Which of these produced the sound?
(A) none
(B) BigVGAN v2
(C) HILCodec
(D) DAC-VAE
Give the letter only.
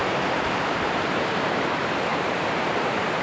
B